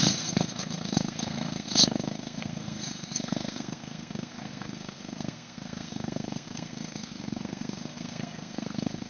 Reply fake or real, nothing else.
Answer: fake